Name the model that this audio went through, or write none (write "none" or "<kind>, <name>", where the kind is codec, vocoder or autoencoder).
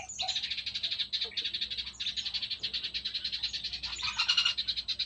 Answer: none